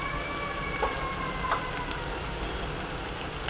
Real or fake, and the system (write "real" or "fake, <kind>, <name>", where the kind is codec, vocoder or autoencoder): fake, vocoder, BigVGAN v2